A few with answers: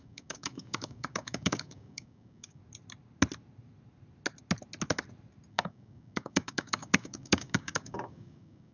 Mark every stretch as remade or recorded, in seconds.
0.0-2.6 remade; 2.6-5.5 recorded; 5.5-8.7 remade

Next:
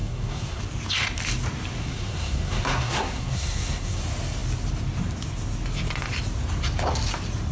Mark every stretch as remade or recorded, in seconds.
0.0-0.6 remade; 0.6-1.8 recorded; 1.8-4.0 remade; 4.0-7.5 recorded